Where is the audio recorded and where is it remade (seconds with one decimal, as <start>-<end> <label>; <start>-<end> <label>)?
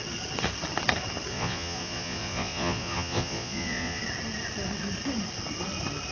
0.0-1.3 recorded; 1.3-4.0 remade; 4.0-6.1 recorded